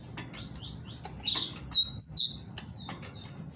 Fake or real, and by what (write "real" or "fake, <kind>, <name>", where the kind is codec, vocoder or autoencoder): real